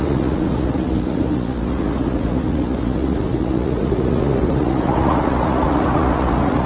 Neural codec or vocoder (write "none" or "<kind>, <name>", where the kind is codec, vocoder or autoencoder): vocoder, Vocos